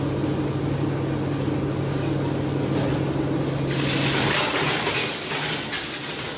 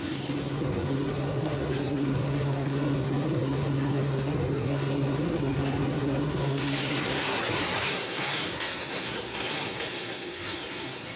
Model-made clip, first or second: second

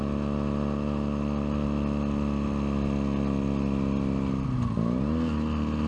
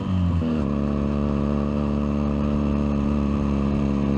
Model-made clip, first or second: second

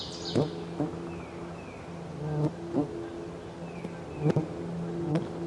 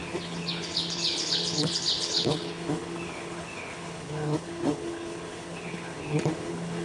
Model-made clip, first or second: second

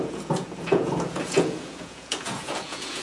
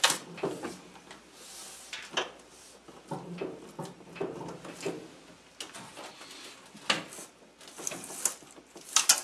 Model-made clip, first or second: first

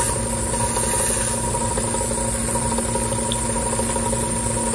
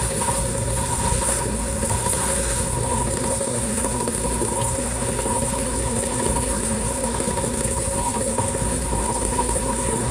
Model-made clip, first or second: second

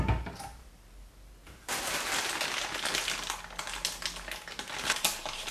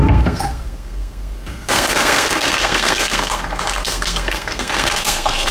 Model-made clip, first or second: second